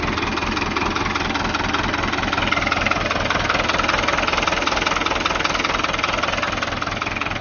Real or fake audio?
real